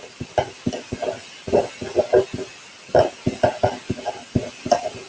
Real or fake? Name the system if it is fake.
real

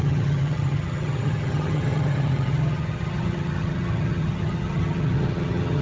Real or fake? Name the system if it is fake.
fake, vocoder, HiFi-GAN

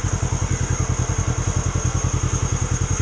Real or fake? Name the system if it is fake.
real